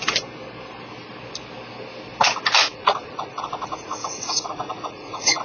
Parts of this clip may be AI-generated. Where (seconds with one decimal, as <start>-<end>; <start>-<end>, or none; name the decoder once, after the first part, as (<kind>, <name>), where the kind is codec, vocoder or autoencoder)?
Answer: 2.6-5.4 (vocoder, Vocos)